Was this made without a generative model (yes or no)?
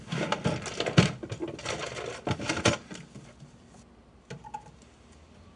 yes